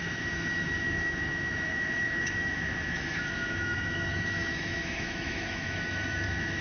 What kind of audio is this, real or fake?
fake